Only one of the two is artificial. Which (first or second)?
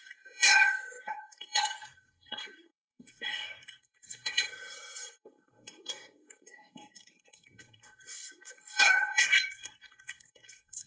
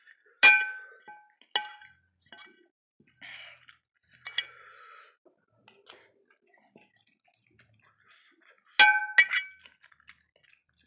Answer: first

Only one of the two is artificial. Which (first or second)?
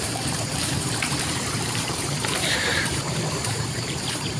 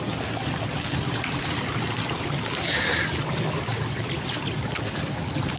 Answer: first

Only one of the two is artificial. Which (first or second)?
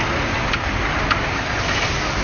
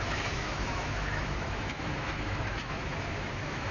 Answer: second